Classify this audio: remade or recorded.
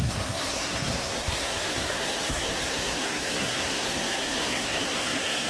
remade